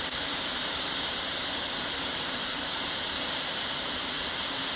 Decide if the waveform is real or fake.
fake